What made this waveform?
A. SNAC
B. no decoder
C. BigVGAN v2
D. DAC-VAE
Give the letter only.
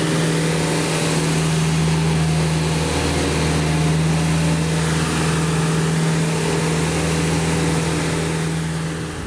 B